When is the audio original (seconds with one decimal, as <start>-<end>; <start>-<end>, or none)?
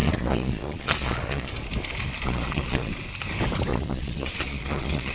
1.5-2.2; 2.9-3.7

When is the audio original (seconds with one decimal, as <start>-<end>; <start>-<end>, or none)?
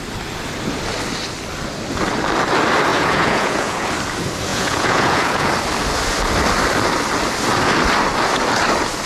0.0-2.9; 3.9-4.5; 5.5-9.1